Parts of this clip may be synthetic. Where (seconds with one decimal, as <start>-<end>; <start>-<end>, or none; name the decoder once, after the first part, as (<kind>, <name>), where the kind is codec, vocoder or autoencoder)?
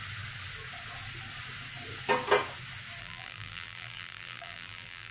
3.0-5.1 (vocoder, BigVGAN v2)